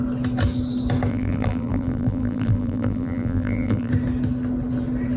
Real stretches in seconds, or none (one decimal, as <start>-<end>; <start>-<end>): 0.0-1.1; 3.9-5.2